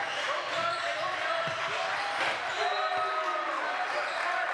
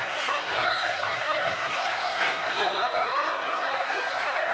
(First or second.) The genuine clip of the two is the first